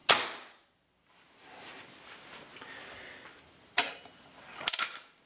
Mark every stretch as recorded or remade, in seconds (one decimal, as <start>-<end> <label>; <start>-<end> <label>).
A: 0.0-5.3 recorded